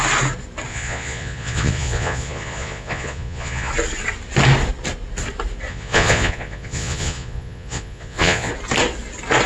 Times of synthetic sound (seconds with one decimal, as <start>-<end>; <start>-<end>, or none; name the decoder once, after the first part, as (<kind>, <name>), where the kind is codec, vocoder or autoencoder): 0.7-3.7 (vocoder, Vocos); 5.7-8.5

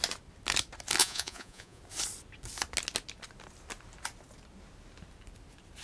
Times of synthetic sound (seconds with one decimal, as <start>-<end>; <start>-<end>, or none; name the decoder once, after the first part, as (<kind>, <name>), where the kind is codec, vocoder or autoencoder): 1.0-1.8 (vocoder, Vocos)

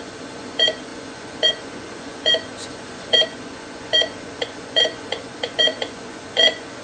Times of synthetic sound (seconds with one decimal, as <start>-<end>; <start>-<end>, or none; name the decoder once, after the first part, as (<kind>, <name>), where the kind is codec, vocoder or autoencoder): 0.0-6.8 (vocoder, Vocos)